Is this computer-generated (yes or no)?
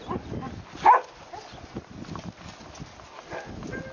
no